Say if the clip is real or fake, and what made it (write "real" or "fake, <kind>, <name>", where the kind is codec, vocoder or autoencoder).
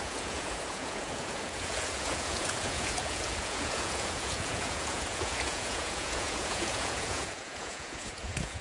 fake, vocoder, Vocos